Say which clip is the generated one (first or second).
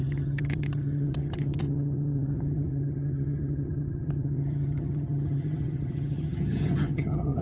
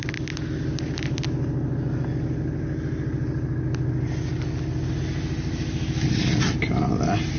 first